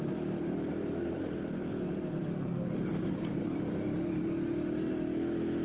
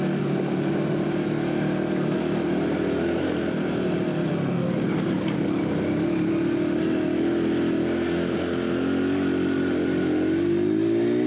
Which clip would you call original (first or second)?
second